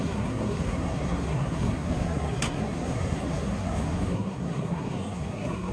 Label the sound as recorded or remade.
remade